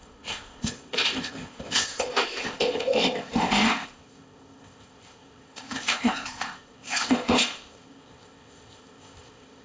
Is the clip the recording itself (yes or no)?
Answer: no